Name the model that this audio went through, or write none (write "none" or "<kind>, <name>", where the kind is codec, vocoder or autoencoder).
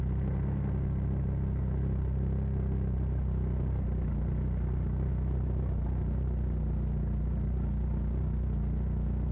none